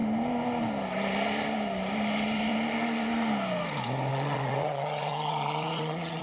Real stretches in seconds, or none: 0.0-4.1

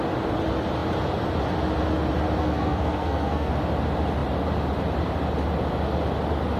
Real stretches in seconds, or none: 0.0-2.4; 3.5-6.6

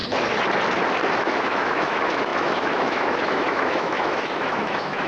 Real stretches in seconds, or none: 0.0-1.1

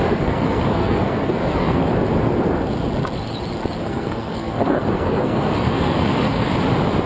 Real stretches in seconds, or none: 1.8-3.8; 6.5-7.1

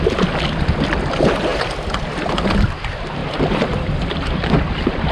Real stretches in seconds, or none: 0.0-1.5; 2.1-3.2

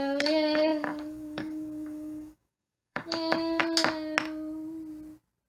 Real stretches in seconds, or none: 3.6-5.5

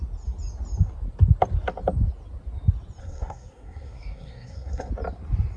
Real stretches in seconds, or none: 0.0-3.0; 4.9-5.6